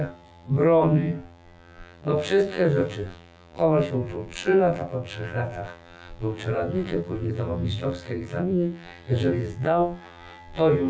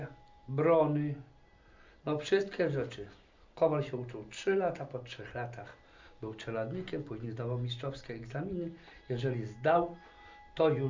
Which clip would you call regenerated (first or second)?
first